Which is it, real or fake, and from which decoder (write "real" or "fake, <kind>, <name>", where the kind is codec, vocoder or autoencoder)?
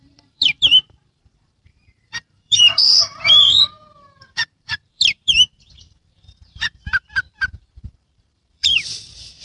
fake, vocoder, BigVGAN v2